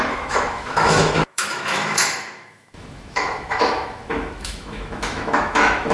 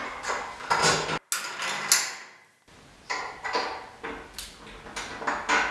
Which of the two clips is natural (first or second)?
second